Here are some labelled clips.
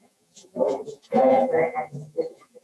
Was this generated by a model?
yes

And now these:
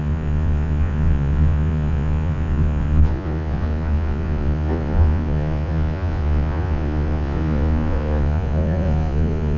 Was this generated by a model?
yes